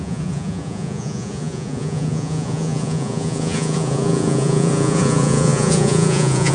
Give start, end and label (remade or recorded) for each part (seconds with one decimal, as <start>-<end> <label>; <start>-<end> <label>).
0.0-6.5 remade

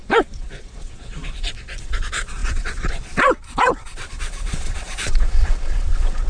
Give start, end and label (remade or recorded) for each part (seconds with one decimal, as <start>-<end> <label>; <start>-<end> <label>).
0.0-6.3 remade

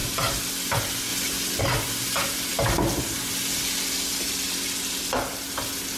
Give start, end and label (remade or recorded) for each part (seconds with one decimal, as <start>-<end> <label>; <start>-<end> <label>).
0.0-6.0 recorded

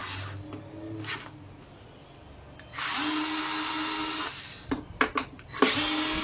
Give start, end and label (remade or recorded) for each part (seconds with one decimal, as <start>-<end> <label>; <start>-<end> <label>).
0.0-6.2 recorded